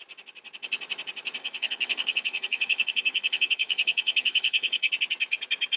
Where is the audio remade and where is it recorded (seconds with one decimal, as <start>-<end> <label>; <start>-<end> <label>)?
0.0-1.4 recorded; 1.4-4.9 remade; 4.9-5.8 recorded